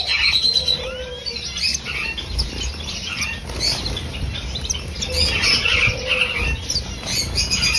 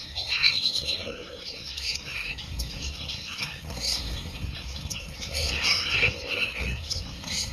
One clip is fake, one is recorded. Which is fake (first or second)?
second